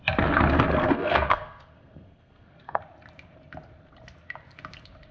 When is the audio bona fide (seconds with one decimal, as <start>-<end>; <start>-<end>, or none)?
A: 0.0-0.8; 2.8-5.1